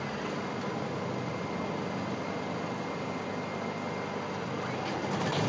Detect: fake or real real